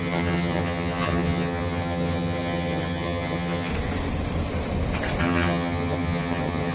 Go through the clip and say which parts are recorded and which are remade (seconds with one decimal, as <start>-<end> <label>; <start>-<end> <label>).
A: 0.0-3.7 remade; 3.7-5.2 recorded; 5.2-6.7 remade